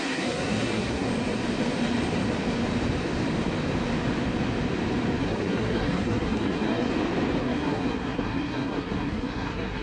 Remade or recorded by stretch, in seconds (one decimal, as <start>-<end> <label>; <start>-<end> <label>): 0.0-1.1 remade; 1.1-5.2 recorded; 5.2-6.9 remade; 6.9-7.4 recorded; 7.4-9.8 remade